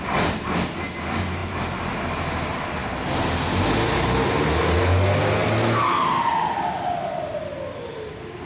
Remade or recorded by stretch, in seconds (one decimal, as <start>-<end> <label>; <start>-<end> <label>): 0.0-8.5 recorded